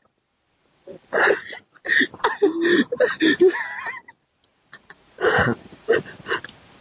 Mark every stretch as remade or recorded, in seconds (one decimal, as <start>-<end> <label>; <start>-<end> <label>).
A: 0.0-0.6 recorded; 0.6-1.8 remade; 1.8-4.5 recorded; 4.5-6.2 remade; 6.2-6.8 recorded